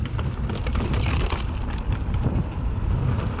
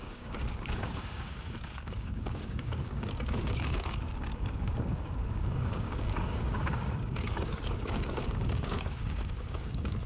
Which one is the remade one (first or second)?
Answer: second